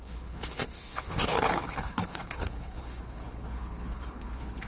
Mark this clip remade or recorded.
remade